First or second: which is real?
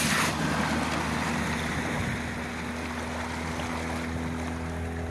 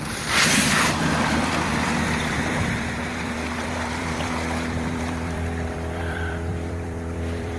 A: first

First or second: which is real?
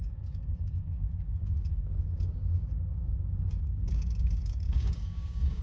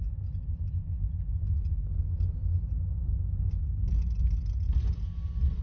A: second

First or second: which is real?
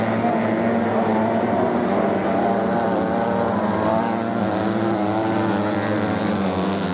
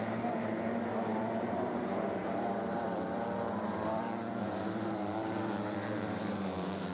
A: first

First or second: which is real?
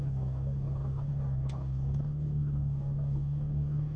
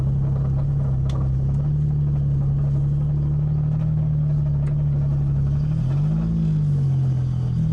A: second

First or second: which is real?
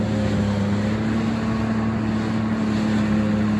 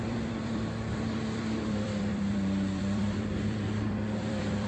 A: first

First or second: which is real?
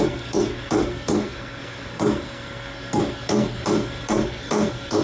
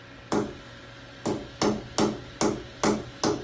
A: second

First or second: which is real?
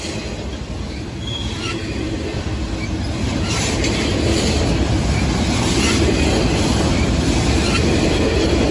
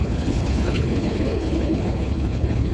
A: first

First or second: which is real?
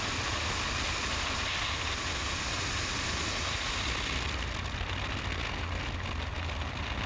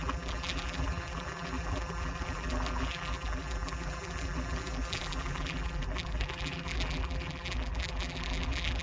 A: first